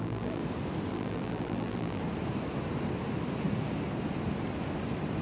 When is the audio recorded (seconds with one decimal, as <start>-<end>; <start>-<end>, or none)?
0.4-0.9; 2.0-5.2